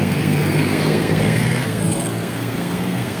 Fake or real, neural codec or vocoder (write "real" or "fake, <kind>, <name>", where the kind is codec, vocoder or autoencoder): fake, codec, SNAC